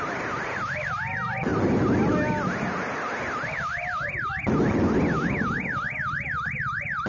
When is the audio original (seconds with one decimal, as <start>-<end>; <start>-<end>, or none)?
0.0-7.1